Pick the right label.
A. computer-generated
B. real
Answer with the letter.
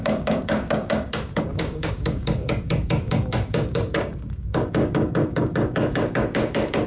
A